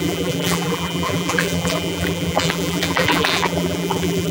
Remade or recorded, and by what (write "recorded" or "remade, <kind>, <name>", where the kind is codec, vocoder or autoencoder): remade, vocoder, BigVGAN v2